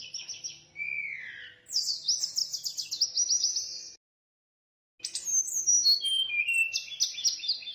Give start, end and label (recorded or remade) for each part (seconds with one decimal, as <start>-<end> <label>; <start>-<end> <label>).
0.0-5.3 recorded; 5.3-6.4 remade; 6.4-7.7 recorded